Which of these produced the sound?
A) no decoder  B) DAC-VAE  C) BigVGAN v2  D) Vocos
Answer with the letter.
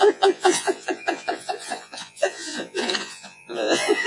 D